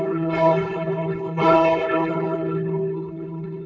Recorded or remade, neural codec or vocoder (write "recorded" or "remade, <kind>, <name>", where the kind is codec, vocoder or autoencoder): remade, codec, HILCodec